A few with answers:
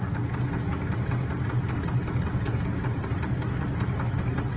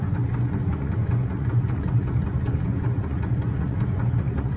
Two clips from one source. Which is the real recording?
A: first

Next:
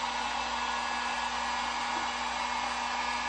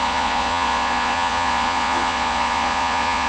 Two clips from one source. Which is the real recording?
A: first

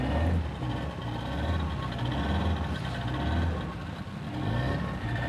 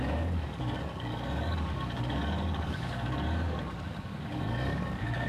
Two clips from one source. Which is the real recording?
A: first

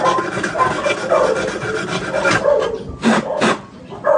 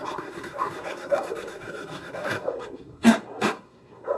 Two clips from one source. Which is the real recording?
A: first